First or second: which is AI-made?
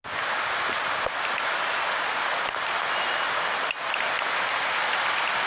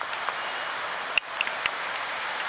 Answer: second